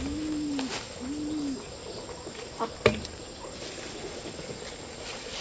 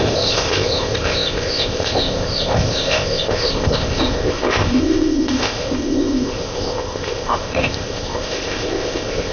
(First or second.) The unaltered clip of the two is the first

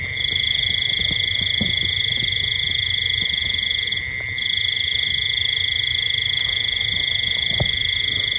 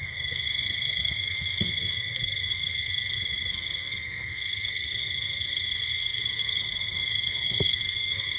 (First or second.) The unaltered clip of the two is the first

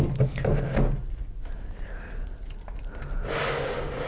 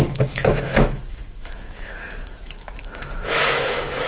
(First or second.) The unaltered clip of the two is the first